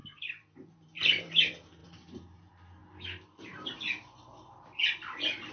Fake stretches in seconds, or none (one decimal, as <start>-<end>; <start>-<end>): 0.0-1.3